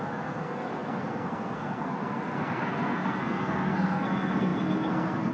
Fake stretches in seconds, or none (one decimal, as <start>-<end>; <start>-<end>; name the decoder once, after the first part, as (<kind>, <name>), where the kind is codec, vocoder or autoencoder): 0.0-5.3 (codec, SNAC)